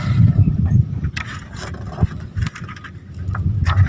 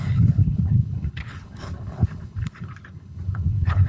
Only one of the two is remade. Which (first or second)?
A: second